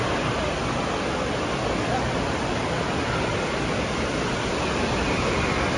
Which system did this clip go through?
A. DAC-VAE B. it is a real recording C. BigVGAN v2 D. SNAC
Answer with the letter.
B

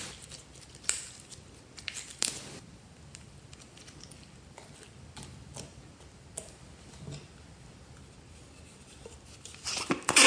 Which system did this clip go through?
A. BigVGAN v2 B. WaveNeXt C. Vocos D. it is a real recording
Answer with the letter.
D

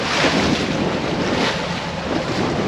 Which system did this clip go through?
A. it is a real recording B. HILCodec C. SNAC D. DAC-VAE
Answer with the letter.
A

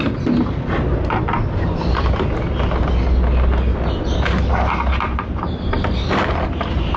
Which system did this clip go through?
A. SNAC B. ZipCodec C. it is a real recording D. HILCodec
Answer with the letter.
C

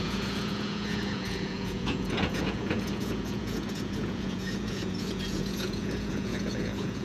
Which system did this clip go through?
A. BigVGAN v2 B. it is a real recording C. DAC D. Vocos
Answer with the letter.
D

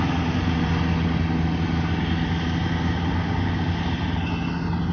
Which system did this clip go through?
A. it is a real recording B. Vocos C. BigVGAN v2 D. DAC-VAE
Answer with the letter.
A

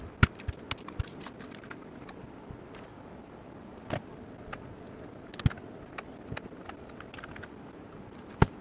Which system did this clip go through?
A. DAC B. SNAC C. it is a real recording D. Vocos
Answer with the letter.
C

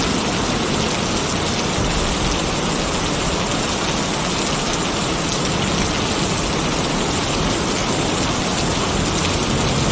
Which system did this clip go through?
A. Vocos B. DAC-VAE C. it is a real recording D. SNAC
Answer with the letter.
C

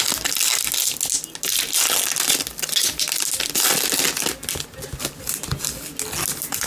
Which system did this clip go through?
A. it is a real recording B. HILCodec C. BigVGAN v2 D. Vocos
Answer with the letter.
A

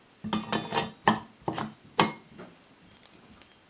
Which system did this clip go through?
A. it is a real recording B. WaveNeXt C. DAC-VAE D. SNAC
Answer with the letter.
A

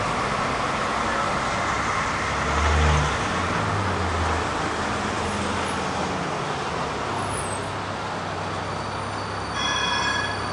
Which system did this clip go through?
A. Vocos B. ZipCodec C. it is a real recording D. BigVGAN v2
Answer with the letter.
C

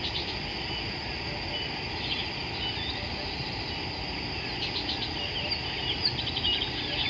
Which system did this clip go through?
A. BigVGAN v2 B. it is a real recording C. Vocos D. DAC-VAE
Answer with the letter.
B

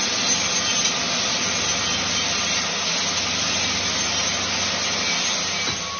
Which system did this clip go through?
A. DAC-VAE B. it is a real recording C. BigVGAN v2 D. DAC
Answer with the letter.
B